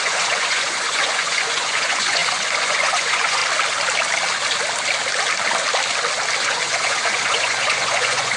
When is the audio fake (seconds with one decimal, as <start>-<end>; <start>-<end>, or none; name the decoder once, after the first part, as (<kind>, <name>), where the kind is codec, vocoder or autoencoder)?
0.0-3.4 (vocoder, Vocos); 6.4-8.4